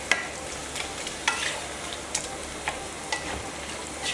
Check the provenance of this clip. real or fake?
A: real